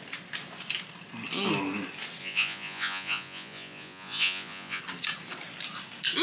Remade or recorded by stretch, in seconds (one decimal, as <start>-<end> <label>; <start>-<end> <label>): 0.0-2.2 recorded; 2.2-4.8 remade; 4.8-6.2 recorded